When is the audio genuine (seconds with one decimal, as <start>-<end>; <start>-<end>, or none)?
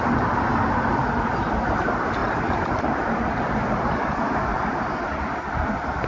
0.0-2.2; 4.3-6.1